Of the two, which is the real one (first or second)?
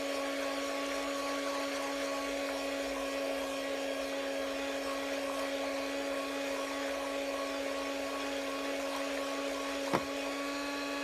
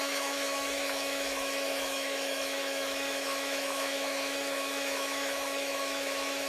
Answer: first